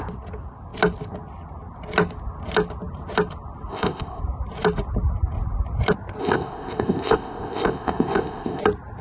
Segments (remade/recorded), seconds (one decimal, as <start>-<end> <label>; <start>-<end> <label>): 0.0-3.7 recorded; 3.7-4.2 remade; 4.2-6.2 recorded; 6.2-8.6 remade; 8.6-9.0 recorded